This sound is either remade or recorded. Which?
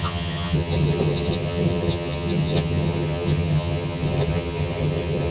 remade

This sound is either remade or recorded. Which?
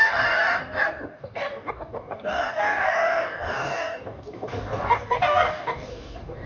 remade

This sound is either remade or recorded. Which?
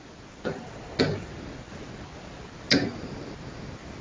recorded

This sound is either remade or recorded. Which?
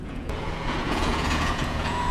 remade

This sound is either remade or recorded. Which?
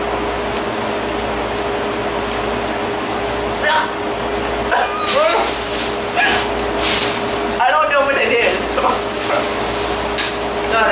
recorded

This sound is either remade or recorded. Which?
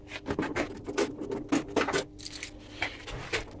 recorded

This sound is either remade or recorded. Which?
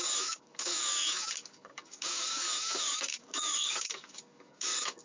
remade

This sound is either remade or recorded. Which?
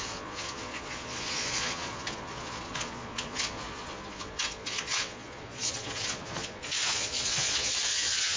remade